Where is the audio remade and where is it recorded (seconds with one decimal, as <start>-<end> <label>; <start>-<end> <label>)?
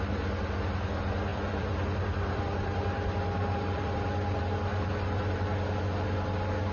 0.0-1.3 recorded; 1.3-4.4 remade; 4.4-6.7 recorded